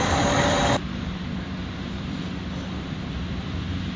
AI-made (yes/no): yes